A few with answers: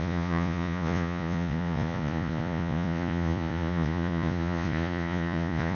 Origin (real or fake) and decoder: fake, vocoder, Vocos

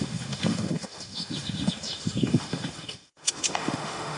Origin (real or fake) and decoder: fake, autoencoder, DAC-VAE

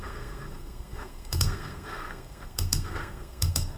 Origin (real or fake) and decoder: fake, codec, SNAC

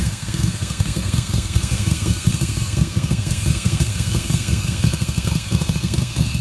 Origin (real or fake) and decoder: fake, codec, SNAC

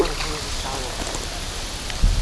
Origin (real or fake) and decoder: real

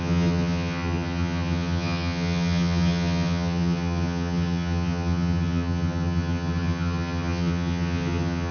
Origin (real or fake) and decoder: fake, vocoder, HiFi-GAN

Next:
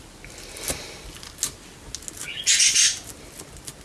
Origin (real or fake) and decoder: real